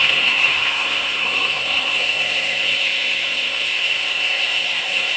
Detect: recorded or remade remade